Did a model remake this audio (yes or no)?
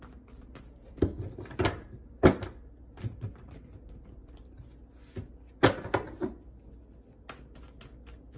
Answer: no